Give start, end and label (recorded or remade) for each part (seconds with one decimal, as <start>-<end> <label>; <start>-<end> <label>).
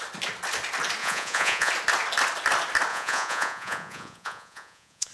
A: 0.0-1.0 recorded; 1.0-1.7 remade; 1.7-2.9 recorded; 2.9-5.1 remade